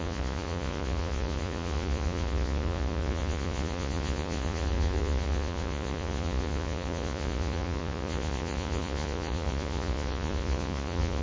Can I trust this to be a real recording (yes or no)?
no